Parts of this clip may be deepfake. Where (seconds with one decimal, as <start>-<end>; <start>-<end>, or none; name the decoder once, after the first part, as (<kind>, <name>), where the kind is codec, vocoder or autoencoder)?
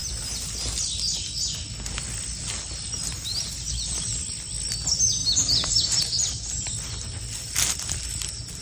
none